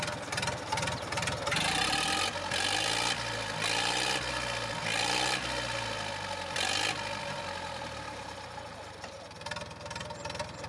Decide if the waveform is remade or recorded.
recorded